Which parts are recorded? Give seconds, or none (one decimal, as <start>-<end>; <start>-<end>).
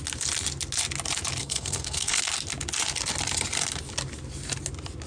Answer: 0.0-1.4; 2.2-5.1